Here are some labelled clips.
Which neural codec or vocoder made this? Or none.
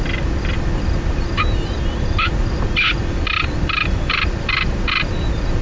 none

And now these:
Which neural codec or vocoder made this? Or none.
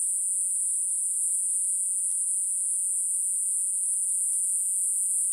vocoder, Vocos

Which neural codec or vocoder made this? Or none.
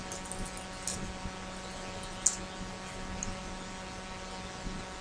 none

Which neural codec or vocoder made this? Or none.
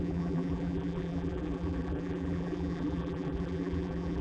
vocoder, BigVGAN v2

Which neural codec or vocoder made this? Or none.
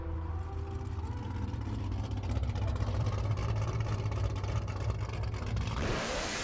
vocoder, BigVGAN v2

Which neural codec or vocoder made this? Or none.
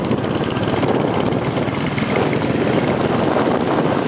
none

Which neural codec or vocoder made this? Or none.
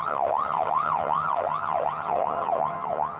vocoder, HiFi-GAN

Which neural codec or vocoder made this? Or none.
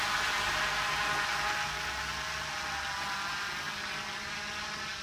none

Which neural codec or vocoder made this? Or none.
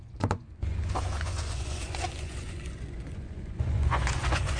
vocoder, Vocos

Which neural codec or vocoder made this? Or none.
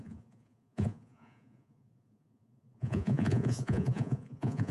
vocoder, Vocos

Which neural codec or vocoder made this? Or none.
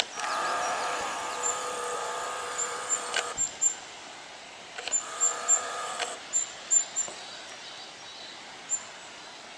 none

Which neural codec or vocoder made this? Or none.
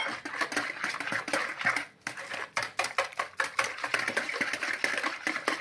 none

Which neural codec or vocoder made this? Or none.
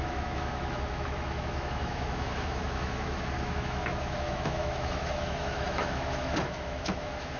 autoencoder, DAC-VAE